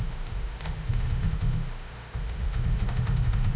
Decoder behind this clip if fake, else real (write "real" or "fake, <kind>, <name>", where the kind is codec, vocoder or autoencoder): fake, autoencoder, DAC-VAE